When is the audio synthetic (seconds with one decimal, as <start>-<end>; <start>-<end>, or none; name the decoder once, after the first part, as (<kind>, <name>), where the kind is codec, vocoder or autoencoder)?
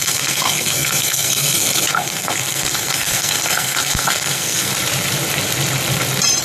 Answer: 0.0-4.7 (codec, SNAC)